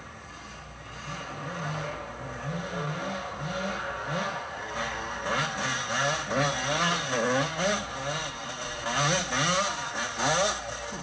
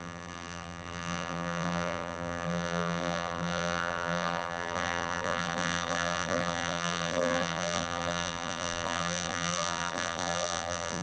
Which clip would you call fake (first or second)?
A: second